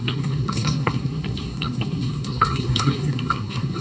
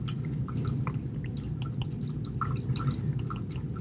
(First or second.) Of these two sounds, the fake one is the first